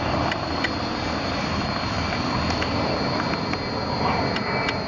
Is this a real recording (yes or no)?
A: yes